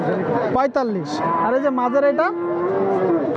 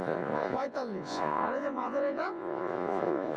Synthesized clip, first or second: second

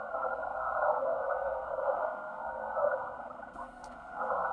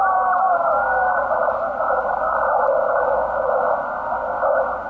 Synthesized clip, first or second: first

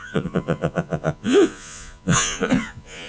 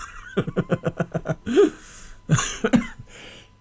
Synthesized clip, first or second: first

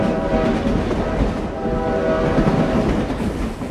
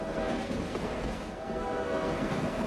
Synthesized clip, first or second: second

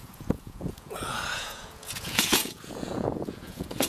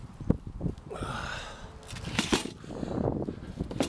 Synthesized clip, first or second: first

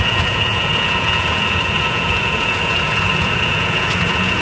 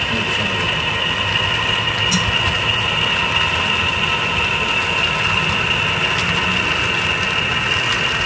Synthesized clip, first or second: first